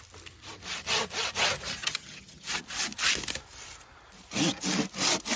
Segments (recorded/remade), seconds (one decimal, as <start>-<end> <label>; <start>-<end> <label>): 0.0-1.8 recorded; 1.8-2.5 remade; 2.5-5.4 recorded

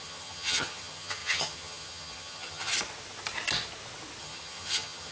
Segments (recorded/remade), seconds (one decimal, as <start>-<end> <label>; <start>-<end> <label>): 0.0-2.7 remade; 2.7-4.2 recorded; 4.2-5.1 remade